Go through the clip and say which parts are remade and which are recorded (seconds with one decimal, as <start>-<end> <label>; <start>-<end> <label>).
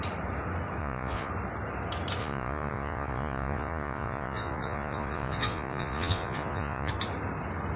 0.0-0.8 recorded; 0.8-1.3 remade; 1.3-2.2 recorded; 2.2-6.9 remade; 6.9-7.8 recorded